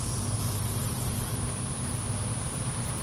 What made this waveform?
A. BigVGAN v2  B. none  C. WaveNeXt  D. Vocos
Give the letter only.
A